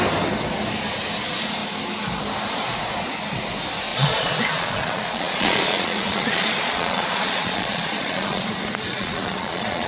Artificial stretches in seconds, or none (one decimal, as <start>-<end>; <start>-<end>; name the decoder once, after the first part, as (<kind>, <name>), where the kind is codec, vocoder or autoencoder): 3.9-8.5 (vocoder, Vocos); 8.9-9.9